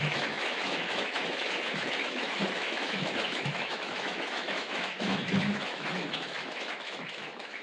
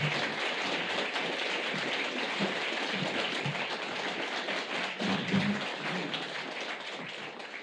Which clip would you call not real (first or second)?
first